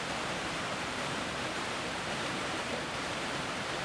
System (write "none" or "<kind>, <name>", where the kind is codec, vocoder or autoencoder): vocoder, BigVGAN v2